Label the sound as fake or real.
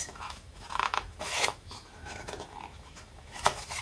fake